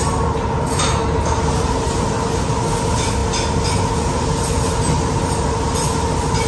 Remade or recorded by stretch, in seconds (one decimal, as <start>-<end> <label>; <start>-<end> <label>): 0.0-6.5 recorded

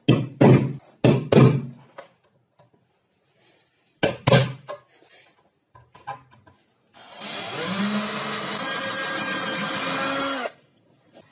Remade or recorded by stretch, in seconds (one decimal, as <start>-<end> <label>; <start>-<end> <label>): 0.0-11.3 recorded

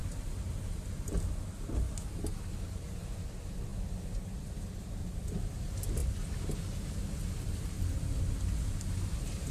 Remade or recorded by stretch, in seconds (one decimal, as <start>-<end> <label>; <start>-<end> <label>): 0.0-9.5 recorded